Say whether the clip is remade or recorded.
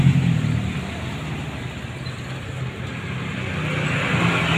recorded